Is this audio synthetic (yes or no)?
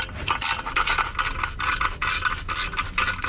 no